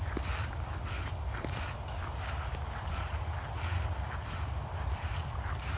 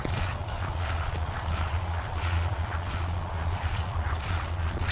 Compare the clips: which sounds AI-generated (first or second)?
second